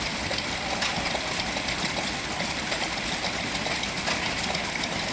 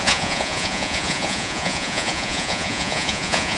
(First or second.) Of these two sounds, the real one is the first